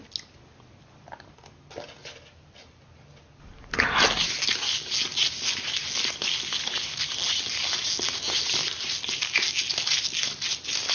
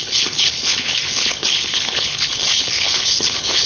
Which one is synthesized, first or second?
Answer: second